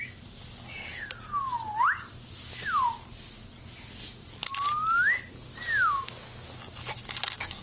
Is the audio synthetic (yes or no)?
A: no